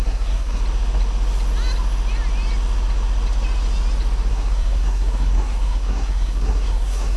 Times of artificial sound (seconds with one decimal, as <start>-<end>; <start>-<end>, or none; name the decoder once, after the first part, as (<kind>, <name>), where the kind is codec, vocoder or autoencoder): 0.0-0.6 (codec, SNAC); 4.3-7.2